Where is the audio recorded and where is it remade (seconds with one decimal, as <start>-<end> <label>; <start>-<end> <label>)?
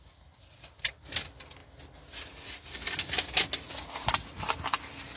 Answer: 0.0-5.2 recorded